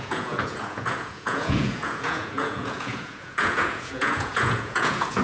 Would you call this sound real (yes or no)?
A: no